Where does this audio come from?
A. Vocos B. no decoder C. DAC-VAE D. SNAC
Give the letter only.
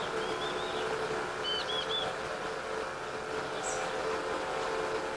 B